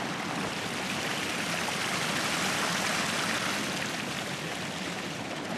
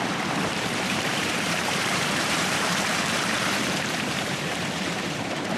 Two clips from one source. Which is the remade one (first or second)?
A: second